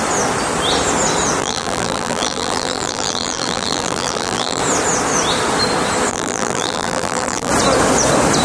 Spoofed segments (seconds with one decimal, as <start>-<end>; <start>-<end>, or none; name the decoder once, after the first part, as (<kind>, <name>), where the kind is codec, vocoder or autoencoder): 1.4-4.6 (vocoder, BigVGAN v2); 6.1-7.5